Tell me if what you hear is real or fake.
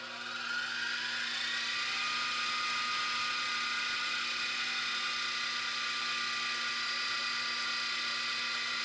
real